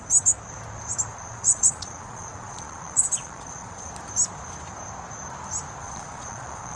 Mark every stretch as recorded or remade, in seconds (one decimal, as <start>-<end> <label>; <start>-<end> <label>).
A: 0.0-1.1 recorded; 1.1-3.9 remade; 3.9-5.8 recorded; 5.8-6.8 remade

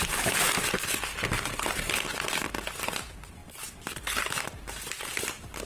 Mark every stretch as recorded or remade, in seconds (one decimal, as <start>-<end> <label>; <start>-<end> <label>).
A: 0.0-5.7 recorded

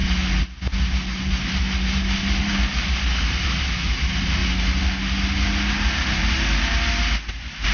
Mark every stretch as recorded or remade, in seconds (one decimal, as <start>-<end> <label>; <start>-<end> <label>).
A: 0.0-2.4 recorded; 2.4-4.4 remade; 4.4-7.3 recorded; 7.3-7.7 remade

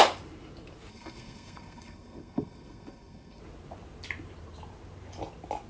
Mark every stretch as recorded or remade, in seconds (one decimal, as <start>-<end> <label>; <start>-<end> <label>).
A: 0.0-0.9 recorded; 0.9-3.4 remade; 3.4-5.7 recorded

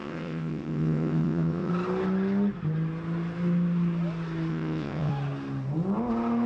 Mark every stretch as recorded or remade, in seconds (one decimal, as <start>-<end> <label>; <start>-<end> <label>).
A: 0.0-1.7 remade; 1.7-4.5 recorded; 4.5-5.1 remade; 5.1-6.5 recorded

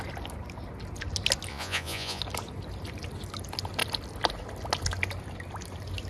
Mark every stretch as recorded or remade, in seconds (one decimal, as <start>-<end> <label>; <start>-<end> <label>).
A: 0.0-1.5 recorded; 1.5-2.2 remade; 2.2-6.1 recorded

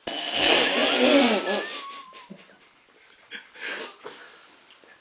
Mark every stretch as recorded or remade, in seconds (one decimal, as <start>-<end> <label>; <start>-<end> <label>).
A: 0.0-5.0 recorded

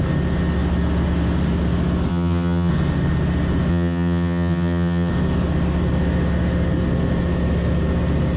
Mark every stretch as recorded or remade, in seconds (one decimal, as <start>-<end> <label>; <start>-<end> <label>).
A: 0.0-2.1 recorded; 2.1-2.7 remade; 2.7-3.7 recorded; 3.7-5.1 remade; 5.1-8.4 recorded